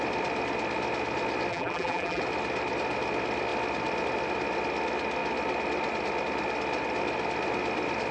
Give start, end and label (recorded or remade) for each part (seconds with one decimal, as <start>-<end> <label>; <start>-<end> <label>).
0.0-1.5 recorded; 1.5-2.2 remade; 2.2-8.1 recorded